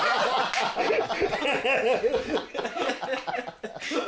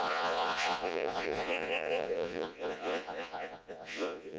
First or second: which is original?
first